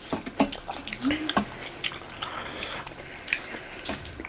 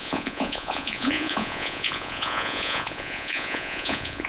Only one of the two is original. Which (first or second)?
first